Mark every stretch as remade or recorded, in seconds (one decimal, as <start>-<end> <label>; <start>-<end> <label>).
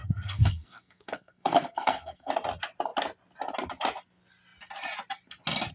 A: 0.0-2.3 remade; 2.3-5.7 recorded